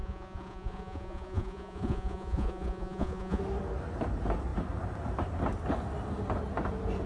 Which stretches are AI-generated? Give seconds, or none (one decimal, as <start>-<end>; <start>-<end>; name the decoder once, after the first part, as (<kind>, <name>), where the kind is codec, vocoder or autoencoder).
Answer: 0.0-3.4 (vocoder, Vocos)